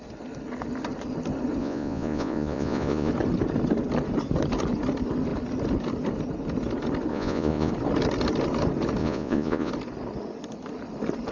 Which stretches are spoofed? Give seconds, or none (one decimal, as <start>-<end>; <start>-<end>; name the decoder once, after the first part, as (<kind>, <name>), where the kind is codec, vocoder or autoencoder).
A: 1.6-3.1 (vocoder, Vocos); 7.1-7.7; 9.0-9.7